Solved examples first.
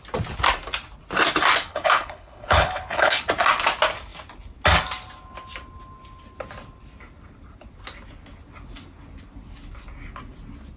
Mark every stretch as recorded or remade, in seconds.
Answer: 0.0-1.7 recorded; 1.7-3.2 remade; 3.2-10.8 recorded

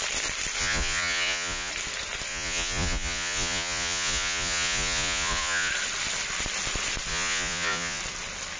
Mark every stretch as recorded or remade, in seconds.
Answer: 0.0-0.6 recorded; 0.6-1.7 remade; 1.7-2.3 recorded; 2.3-5.7 remade; 5.7-7.1 recorded; 7.1-8.0 remade; 8.0-8.6 recorded

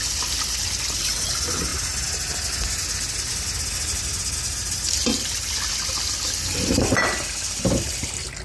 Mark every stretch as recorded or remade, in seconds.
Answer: 0.0-8.4 recorded